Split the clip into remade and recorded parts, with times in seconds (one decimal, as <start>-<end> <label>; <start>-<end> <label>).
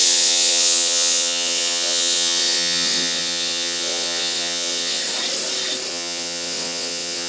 0.0-5.0 remade; 5.0-5.9 recorded; 5.9-7.3 remade